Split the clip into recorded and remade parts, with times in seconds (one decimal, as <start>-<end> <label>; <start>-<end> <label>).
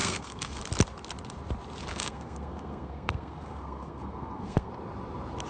0.0-0.6 remade; 0.6-1.9 recorded; 1.9-4.7 remade; 4.7-5.5 recorded